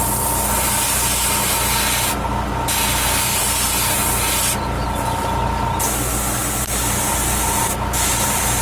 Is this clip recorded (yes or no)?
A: yes